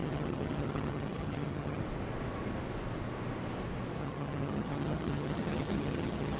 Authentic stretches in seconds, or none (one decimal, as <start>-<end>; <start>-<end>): 1.8-4.0